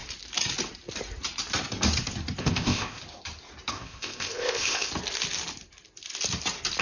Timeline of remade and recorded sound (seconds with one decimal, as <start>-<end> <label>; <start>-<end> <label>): 0.0-2.4 recorded; 2.4-3.0 remade; 3.0-3.7 recorded; 3.7-4.9 remade; 4.9-6.8 recorded